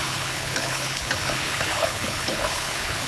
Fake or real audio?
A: fake